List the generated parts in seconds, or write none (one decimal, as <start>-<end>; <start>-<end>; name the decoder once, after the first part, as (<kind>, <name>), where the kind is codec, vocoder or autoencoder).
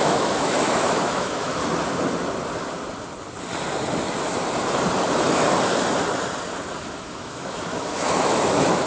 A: 0.0-1.6 (autoencoder, DAC-VAE); 6.8-8.9